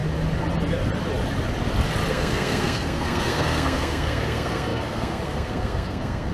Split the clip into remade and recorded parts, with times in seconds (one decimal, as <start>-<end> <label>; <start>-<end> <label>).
0.0-2.1 recorded; 2.1-6.3 remade